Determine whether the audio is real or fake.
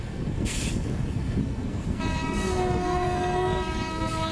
fake